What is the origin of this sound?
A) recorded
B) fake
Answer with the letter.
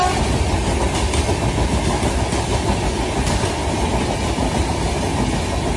A